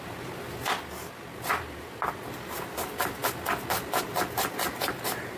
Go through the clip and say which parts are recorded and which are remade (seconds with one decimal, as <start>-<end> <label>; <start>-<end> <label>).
0.0-5.4 recorded